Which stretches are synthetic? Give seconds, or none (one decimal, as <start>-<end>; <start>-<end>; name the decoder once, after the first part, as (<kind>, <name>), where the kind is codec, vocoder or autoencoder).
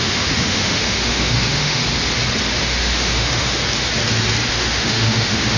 0.0-1.8 (autoencoder, DAC-VAE); 2.6-3.6; 4.5-5.6